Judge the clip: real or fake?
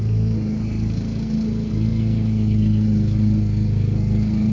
fake